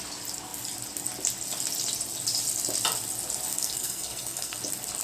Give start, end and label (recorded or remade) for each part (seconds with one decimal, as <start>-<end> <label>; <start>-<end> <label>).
0.0-3.5 recorded; 3.5-4.6 remade; 4.6-5.0 recorded